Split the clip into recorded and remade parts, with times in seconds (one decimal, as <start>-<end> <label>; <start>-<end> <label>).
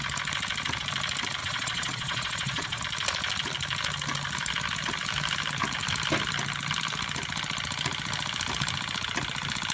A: 0.0-1.4 recorded; 1.4-2.8 remade; 2.8-9.7 recorded